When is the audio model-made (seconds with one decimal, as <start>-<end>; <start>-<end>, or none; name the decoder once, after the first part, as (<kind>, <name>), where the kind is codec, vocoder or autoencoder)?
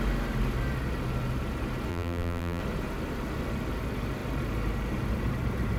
1.9-2.6 (vocoder, BigVGAN v2)